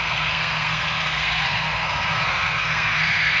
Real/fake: fake